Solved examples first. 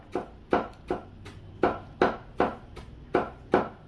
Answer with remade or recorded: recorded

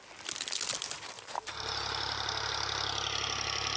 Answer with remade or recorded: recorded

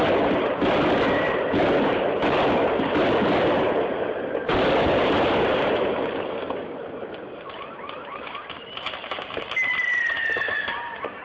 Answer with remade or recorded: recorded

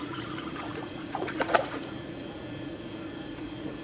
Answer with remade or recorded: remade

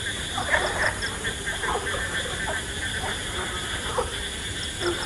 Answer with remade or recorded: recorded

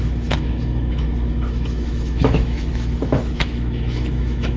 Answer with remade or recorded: remade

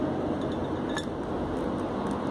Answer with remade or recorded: recorded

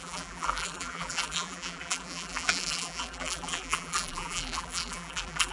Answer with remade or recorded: remade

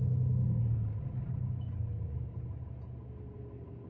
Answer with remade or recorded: recorded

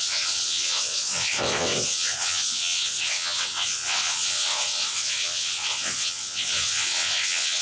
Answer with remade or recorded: remade